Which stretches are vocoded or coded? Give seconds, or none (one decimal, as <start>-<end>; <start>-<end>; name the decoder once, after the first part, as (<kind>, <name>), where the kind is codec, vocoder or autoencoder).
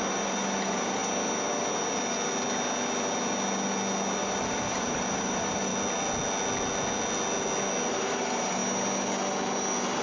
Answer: 0.0-1.0 (vocoder, BigVGAN v2); 4.2-5.7; 7.9-8.6